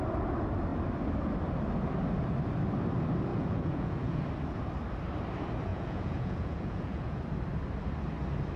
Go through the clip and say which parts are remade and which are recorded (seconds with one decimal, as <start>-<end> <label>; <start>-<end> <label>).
0.0-3.3 recorded; 3.3-4.2 remade; 4.2-5.7 recorded; 5.7-7.2 remade; 7.2-8.6 recorded